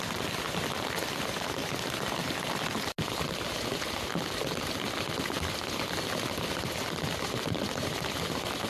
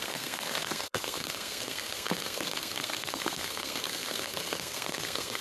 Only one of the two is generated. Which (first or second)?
second